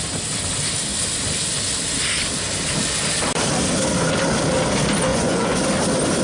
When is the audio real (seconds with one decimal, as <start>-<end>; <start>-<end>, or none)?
0.0-5.1; 5.6-6.2